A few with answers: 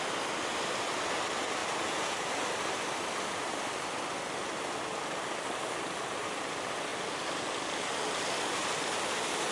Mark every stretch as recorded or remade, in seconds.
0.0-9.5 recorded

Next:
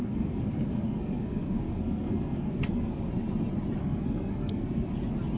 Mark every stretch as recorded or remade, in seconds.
0.0-3.1 remade; 3.1-3.8 recorded; 3.8-4.9 remade; 4.9-5.4 recorded